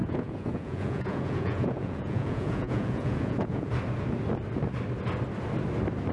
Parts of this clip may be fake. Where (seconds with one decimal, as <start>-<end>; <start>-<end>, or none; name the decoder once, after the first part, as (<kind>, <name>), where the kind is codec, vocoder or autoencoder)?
0.0-3.7 (vocoder, Vocos)